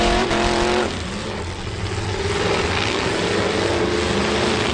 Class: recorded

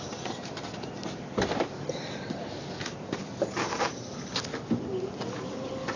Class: recorded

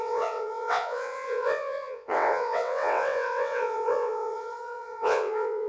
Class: remade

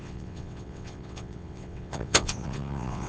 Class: remade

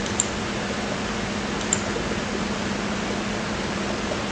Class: recorded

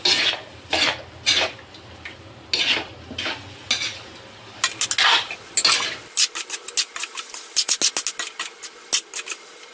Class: recorded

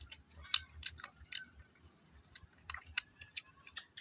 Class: recorded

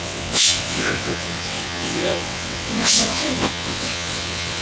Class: remade